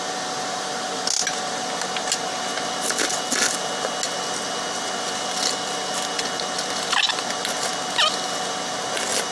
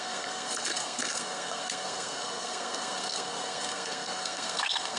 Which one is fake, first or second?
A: second